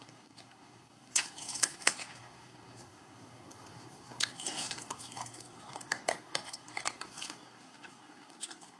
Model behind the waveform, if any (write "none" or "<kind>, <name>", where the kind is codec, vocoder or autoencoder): codec, SNAC